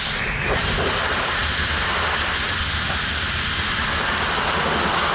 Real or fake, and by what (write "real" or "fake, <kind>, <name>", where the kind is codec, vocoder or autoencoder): real